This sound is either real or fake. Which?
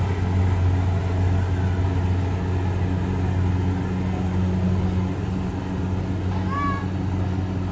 real